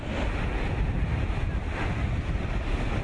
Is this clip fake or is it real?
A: real